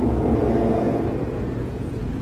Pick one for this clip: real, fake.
fake